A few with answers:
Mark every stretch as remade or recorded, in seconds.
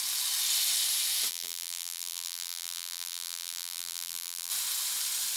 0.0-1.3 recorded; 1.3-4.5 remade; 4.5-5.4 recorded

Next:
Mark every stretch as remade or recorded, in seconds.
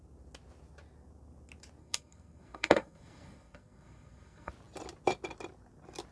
0.0-1.8 recorded; 1.8-4.5 remade; 4.5-6.1 recorded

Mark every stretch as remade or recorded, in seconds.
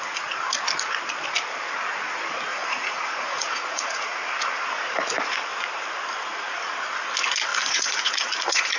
0.0-2.5 recorded; 2.5-4.2 remade; 4.2-7.5 recorded; 7.5-8.8 remade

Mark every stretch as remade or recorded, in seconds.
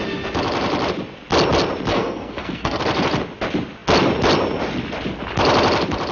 0.0-1.9 recorded; 1.9-2.8 remade; 2.8-6.1 recorded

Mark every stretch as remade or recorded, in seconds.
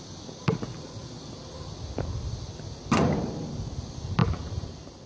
0.0-0.4 recorded; 0.4-3.5 remade; 3.5-4.2 recorded; 4.2-5.1 remade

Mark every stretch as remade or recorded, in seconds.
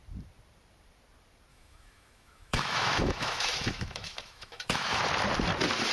0.0-1.5 recorded; 1.5-5.0 remade; 5.0-5.9 recorded